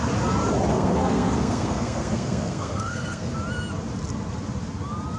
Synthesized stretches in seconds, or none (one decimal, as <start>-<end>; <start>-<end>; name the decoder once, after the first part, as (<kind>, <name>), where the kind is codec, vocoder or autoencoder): 0.7-3.3 (codec, SNAC)